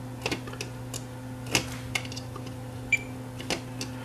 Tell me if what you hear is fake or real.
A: real